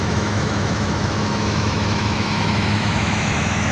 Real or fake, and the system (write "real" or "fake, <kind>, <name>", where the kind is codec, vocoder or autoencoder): fake, autoencoder, DAC-VAE